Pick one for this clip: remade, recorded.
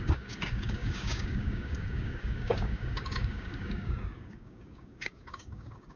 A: remade